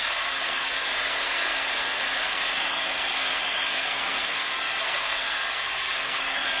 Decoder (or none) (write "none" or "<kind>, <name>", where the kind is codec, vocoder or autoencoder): codec, SNAC